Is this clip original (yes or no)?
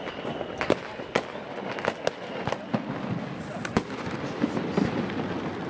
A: yes